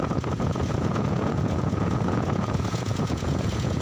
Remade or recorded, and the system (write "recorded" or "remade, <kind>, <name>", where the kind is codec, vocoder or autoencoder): remade, vocoder, Vocos